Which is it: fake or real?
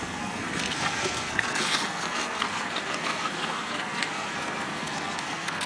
fake